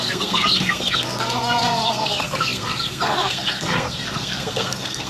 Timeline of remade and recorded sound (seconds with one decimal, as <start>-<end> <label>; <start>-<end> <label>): 0.0-5.1 remade

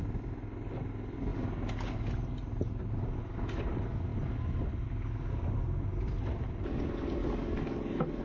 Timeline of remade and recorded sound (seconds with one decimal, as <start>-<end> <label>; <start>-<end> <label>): 0.0-7.2 recorded; 7.2-8.2 remade

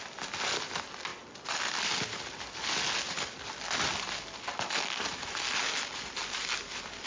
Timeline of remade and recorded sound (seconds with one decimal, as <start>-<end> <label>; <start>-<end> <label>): 0.0-7.1 recorded

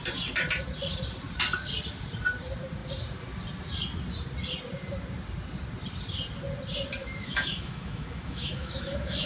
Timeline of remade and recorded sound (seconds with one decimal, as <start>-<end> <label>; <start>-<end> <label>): 0.0-7.0 recorded; 7.0-9.3 remade

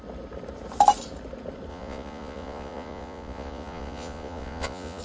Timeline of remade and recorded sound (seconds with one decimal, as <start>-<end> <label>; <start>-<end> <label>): 0.0-1.7 recorded; 1.7-5.0 remade